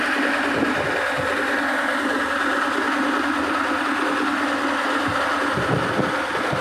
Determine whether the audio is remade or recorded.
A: recorded